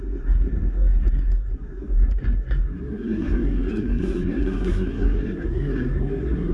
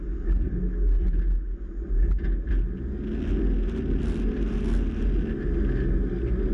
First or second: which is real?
second